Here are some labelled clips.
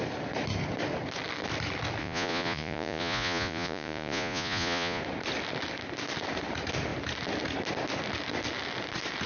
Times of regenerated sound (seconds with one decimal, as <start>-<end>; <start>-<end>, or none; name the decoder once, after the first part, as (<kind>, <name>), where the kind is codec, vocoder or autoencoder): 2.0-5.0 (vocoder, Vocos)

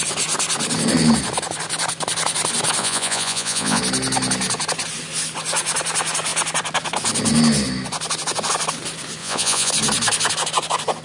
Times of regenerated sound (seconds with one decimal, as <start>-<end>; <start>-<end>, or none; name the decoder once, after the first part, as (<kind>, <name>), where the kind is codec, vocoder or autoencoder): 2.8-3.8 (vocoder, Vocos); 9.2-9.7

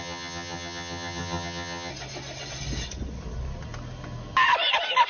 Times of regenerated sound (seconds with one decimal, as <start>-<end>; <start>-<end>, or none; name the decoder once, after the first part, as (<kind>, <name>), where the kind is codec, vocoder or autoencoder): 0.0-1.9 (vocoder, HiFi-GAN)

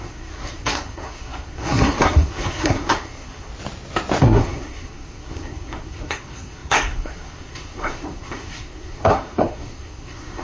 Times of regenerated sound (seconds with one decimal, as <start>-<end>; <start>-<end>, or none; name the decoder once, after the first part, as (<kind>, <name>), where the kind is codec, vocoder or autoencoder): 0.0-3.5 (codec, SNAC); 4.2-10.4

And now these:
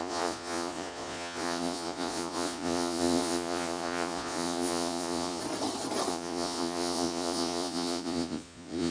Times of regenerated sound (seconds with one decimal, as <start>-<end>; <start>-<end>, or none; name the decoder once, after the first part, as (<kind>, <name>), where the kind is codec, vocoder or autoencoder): 0.0-5.4 (vocoder, Vocos); 6.1-8.9

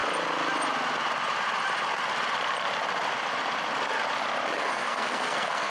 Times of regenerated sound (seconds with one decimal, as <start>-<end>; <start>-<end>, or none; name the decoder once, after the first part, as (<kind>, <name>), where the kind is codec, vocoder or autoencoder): 4.6-5.7 (codec, SNAC)

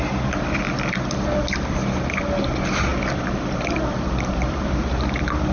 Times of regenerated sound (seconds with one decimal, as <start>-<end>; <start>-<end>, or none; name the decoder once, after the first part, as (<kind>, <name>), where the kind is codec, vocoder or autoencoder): 2.9-4.8 (vocoder, BigVGAN v2)

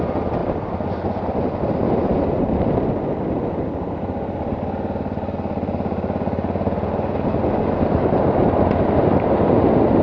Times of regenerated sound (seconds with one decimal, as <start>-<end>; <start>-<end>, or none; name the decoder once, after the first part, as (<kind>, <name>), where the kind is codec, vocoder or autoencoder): none